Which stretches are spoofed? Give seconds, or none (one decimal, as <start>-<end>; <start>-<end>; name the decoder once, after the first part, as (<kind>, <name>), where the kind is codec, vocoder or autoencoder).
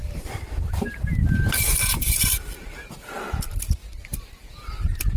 0.0-3.8 (vocoder, BigVGAN v2)